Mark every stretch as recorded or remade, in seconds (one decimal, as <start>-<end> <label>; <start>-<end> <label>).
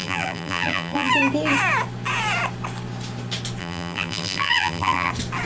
0.0-1.1 remade; 1.1-3.6 recorded; 3.6-5.1 remade; 5.1-5.5 recorded